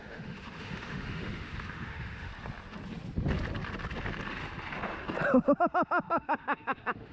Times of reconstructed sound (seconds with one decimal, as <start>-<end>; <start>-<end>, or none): 0.0-2.3; 5.6-7.1